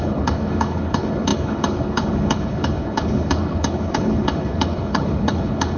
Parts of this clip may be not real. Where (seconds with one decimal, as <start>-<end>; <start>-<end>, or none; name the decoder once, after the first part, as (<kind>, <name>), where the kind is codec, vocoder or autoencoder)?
0.0-5.8 (codec, HILCodec)